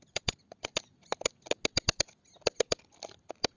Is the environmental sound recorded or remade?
recorded